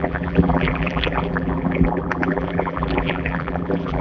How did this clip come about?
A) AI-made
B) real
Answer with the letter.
A